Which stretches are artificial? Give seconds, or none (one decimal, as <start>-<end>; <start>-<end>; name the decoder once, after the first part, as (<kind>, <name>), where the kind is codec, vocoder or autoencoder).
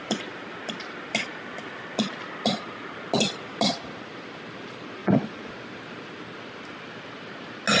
5.0-5.5 (vocoder, Vocos)